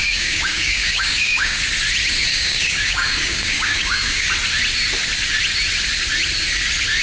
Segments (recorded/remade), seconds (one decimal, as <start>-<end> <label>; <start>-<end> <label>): 0.0-1.6 remade; 1.6-2.3 recorded; 2.3-4.3 remade; 4.3-7.0 recorded